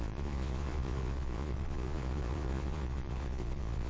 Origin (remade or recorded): remade